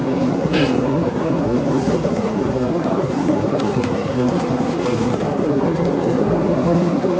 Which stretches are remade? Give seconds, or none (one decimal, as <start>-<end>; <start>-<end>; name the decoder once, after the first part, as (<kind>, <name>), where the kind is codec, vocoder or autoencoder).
0.0-7.2 (codec, SNAC)